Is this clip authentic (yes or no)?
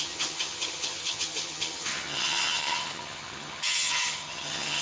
no